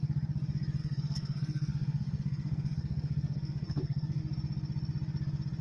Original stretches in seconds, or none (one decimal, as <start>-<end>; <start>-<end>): 0.0-0.8; 4.2-5.6